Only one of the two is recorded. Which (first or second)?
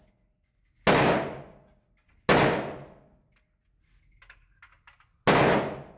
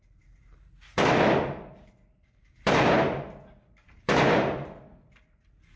first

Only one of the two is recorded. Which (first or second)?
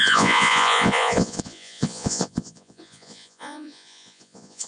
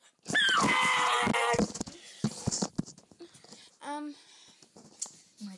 second